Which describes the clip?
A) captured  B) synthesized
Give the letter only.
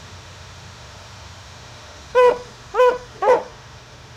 B